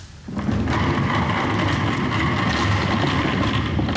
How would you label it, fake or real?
real